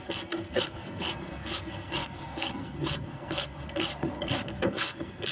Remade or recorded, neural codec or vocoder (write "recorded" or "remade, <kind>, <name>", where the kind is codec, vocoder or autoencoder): remade, codec, SNAC